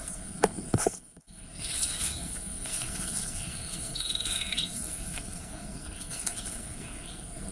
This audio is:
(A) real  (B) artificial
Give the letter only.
B